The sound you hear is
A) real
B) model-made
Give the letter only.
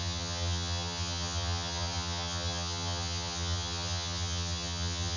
B